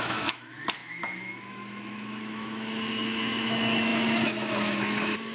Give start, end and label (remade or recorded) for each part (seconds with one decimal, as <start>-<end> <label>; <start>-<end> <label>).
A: 0.0-5.3 remade